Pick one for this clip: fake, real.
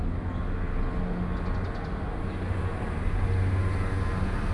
real